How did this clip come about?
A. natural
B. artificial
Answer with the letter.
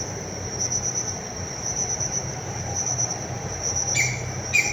B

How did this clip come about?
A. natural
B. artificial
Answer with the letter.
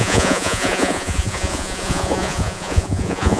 B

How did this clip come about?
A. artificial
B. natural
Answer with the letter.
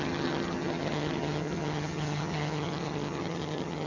A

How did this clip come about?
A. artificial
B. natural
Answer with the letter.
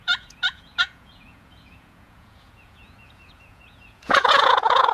A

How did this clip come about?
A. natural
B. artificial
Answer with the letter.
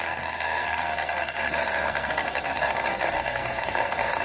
B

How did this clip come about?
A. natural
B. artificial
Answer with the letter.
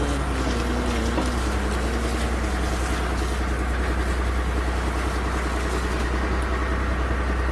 A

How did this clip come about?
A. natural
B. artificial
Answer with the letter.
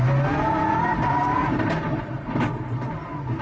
A